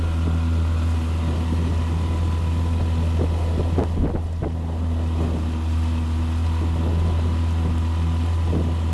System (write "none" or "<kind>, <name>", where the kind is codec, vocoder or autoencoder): none